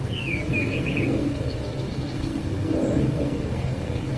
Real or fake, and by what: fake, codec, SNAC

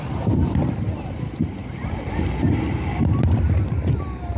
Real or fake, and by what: real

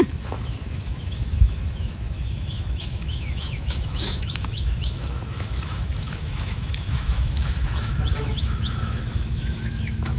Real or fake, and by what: fake, autoencoder, DAC-VAE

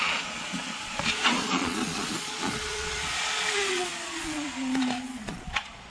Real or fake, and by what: fake, vocoder, Vocos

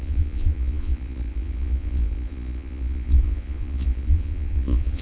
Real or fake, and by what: fake, vocoder, Vocos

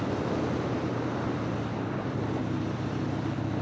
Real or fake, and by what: real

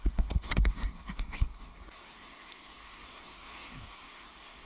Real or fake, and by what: fake, codec, SNAC